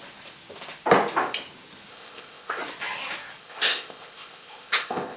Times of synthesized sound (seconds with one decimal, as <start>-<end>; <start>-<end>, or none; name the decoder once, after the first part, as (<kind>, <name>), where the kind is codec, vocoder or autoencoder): 1.9-2.6 (codec, ZipCodec); 3.4-5.2

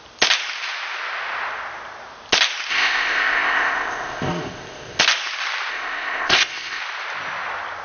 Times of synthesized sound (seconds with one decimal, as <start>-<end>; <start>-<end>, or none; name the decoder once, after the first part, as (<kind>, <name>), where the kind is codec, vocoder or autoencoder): 2.7-5.0 (codec, ZipCodec); 5.7-6.8